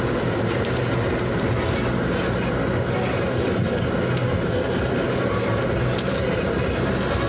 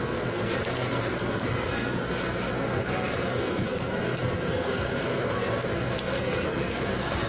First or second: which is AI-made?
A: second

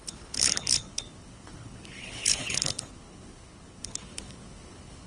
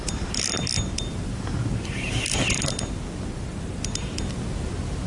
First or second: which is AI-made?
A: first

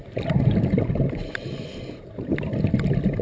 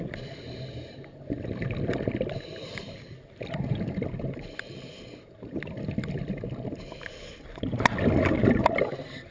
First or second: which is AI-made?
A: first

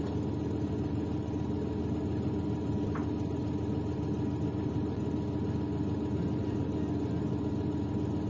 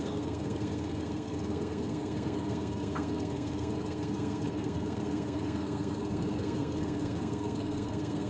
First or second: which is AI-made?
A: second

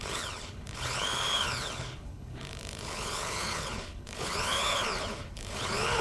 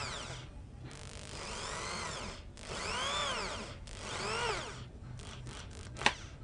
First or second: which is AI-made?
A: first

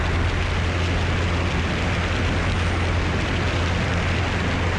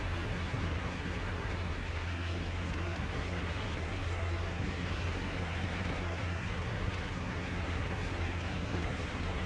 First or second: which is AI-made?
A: second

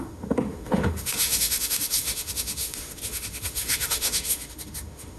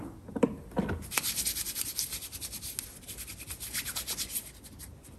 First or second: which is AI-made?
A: first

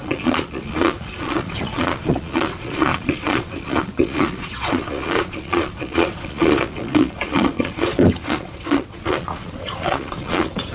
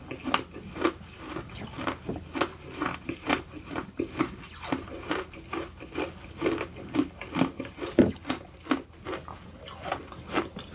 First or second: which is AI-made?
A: first